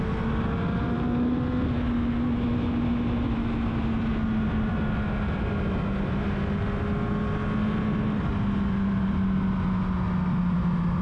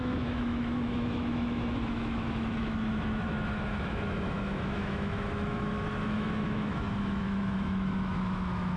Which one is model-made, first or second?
second